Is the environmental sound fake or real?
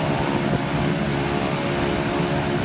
real